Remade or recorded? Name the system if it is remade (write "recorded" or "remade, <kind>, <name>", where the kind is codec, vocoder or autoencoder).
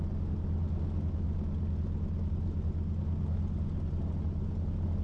recorded